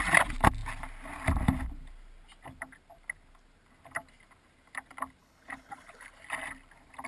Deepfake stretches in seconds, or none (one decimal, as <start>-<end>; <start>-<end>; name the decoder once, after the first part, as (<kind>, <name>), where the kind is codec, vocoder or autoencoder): 5.2-6.1 (codec, HILCodec)